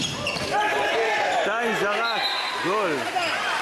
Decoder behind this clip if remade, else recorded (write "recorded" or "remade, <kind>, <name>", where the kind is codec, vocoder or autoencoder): recorded